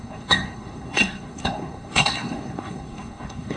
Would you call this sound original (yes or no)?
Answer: no